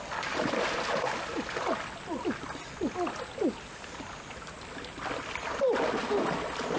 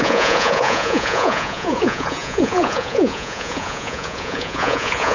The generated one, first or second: second